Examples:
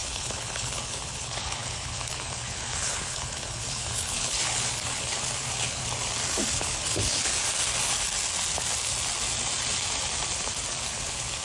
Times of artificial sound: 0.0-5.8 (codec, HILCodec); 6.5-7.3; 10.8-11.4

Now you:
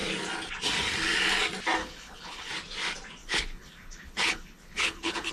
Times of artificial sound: 1.8-2.5 (codec, HILCodec); 3.2-5.3

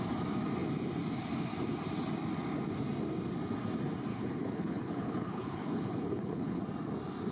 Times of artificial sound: 4.1-6.6 (codec, HILCodec)